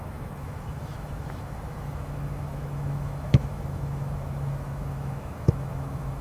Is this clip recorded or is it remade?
remade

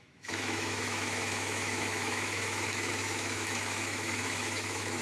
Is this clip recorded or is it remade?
remade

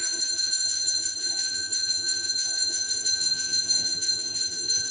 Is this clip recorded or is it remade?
remade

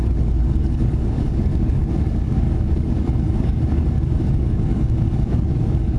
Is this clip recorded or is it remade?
remade